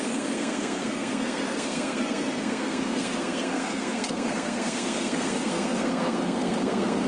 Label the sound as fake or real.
fake